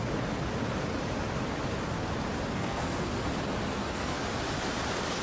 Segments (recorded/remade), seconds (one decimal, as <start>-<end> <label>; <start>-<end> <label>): 0.0-2.5 recorded; 2.5-3.1 remade; 3.1-3.7 recorded; 3.7-4.2 remade; 4.2-5.2 recorded

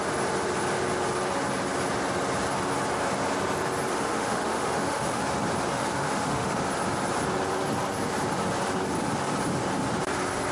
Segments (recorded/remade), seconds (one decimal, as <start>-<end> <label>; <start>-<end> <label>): 0.0-3.9 recorded; 3.9-5.2 remade; 5.2-5.7 recorded; 5.7-6.6 remade; 6.6-10.5 recorded

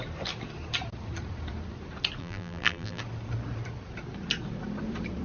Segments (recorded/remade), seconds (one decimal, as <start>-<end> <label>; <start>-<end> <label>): 0.0-2.2 recorded; 2.2-3.0 remade; 3.0-5.2 recorded

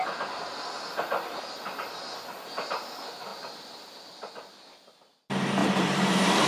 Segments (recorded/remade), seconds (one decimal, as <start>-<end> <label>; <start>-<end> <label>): 0.0-3.3 recorded; 3.3-4.5 remade; 4.5-5.6 recorded; 5.6-6.5 remade

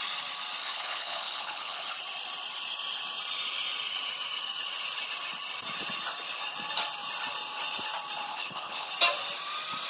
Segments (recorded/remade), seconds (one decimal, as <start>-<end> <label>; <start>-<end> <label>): 0.0-0.6 recorded; 0.6-1.9 remade; 1.9-8.3 recorded; 8.3-8.9 remade; 8.9-9.9 recorded

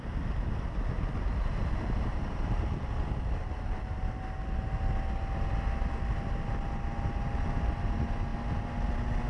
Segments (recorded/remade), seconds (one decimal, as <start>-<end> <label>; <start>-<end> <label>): 0.0-9.3 recorded

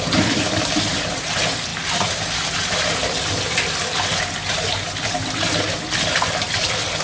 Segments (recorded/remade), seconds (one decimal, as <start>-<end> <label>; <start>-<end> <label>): 0.0-7.0 recorded

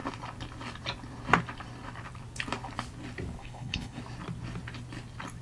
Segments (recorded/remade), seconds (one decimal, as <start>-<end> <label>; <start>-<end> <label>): 0.0-3.4 recorded; 3.4-4.0 remade; 4.0-5.4 recorded